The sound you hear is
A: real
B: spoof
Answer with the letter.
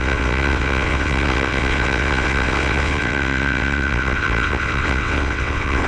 B